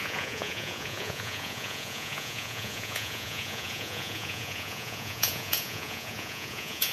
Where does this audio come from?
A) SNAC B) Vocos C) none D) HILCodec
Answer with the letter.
B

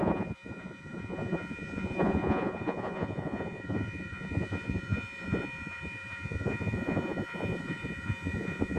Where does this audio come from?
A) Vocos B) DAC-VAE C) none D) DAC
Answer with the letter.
A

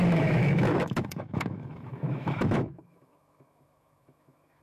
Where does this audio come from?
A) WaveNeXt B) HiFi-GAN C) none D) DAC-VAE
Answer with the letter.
D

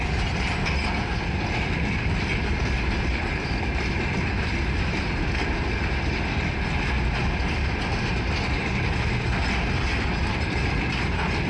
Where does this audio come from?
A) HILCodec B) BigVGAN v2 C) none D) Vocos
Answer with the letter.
C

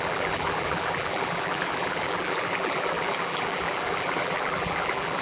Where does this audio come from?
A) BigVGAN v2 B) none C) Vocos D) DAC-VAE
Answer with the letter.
A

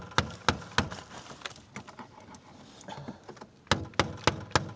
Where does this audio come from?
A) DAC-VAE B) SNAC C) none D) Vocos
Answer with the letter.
C